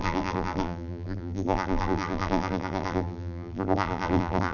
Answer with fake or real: fake